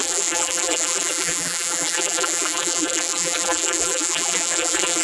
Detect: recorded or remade remade